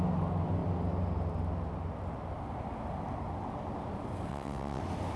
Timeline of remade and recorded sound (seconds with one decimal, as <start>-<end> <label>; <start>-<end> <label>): 0.0-4.3 recorded; 4.3-4.8 remade; 4.8-5.2 recorded

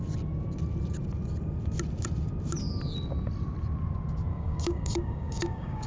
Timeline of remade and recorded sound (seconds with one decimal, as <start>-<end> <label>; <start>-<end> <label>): 0.0-4.3 recorded; 4.3-5.9 remade

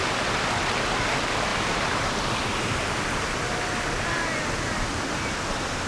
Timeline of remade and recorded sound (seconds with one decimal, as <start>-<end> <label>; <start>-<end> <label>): 0.0-1.5 recorded; 1.5-3.8 remade; 3.8-5.9 recorded